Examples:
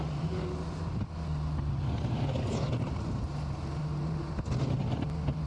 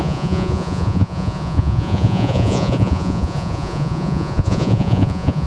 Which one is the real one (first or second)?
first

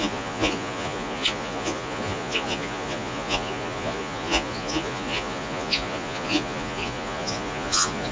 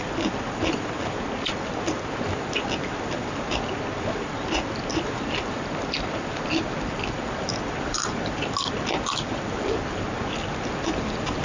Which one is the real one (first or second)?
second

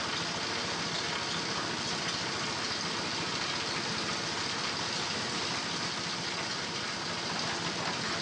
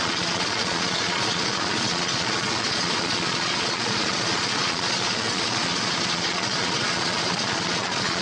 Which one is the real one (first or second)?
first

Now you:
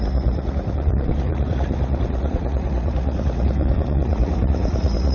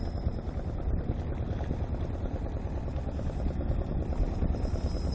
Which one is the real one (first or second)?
second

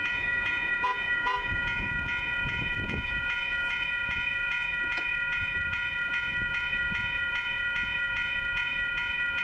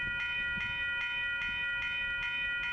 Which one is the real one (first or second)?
second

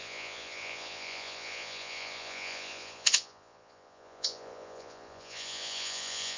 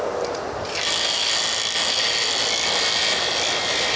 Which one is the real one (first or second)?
second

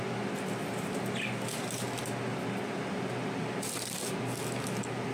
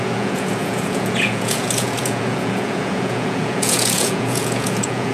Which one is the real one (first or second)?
first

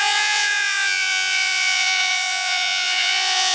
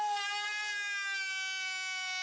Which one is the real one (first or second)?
second